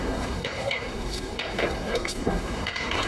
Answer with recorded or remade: remade